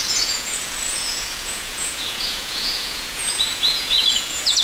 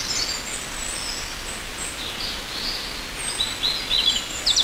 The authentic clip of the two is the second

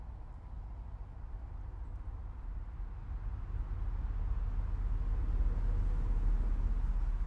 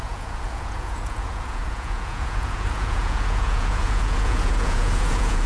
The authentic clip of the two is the first